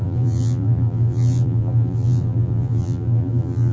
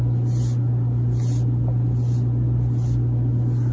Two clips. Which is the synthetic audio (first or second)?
first